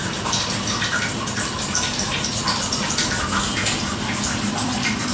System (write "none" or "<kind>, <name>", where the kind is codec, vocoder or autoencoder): vocoder, BigVGAN v2